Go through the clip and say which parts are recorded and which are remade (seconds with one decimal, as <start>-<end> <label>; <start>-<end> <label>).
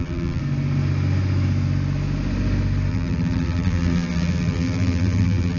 0.0-0.4 remade; 0.4-2.9 recorded; 2.9-5.6 remade